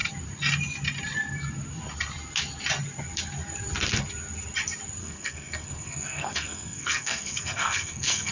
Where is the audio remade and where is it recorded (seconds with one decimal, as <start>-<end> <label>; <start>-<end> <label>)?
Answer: 0.0-5.0 recorded; 5.0-8.3 remade

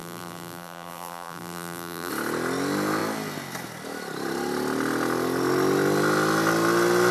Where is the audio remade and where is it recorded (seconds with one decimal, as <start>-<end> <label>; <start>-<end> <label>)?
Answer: 0.0-2.1 remade; 2.1-7.1 recorded

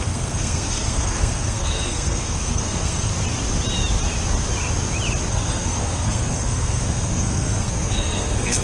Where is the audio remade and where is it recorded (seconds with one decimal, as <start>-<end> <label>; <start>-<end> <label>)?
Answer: 0.0-3.1 remade; 3.1-5.3 recorded; 5.3-8.6 remade

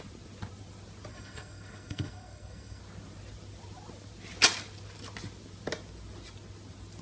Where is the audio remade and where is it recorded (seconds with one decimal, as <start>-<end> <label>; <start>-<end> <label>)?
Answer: 0.0-1.1 recorded; 1.1-2.8 remade; 2.8-7.0 recorded

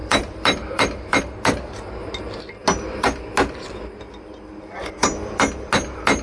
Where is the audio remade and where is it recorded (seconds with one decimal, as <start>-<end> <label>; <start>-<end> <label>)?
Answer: 0.0-1.2 remade; 1.2-6.2 recorded

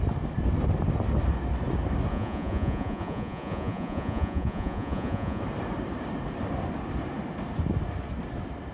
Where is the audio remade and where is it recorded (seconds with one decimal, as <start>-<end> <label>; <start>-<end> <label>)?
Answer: 0.0-2.1 recorded; 2.1-5.4 remade; 5.4-8.7 recorded

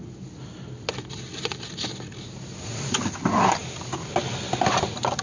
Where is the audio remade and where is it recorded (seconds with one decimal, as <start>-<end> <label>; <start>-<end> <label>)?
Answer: 0.0-5.2 recorded

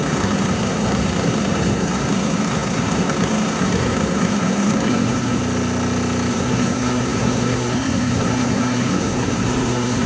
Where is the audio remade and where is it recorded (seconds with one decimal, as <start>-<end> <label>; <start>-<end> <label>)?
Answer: 0.0-5.4 remade; 5.4-6.3 recorded; 6.3-10.1 remade